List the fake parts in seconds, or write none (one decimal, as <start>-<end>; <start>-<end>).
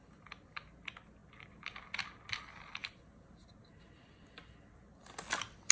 none